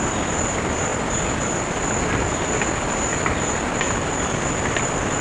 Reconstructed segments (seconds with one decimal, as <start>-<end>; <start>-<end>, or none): 0.0-0.9; 2.3-3.1; 4.0-5.2